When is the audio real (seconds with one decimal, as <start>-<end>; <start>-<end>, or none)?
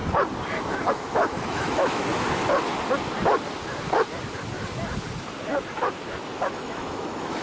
0.0-0.9; 2.1-6.5